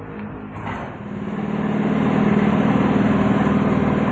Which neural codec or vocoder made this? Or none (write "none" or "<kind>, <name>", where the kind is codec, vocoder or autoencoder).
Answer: none